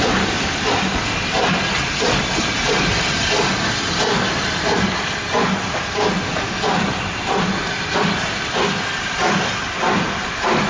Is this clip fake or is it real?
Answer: real